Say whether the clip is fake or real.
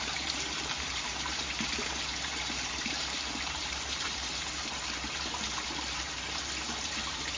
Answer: fake